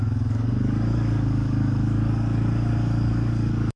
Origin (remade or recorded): remade